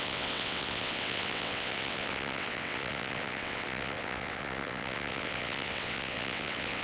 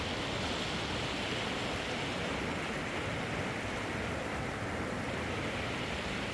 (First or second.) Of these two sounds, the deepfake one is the first